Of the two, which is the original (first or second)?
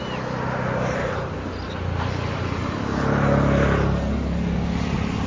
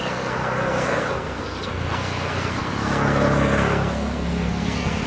first